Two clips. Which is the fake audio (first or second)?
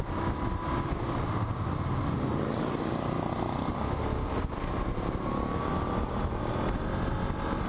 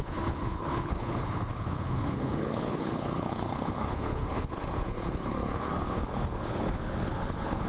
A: second